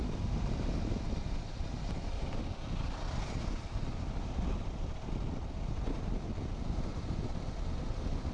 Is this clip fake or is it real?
real